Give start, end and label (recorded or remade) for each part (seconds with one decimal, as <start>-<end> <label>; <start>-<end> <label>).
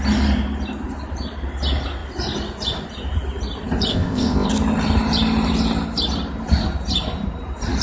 0.0-3.9 recorded; 3.9-4.5 remade; 4.5-7.8 recorded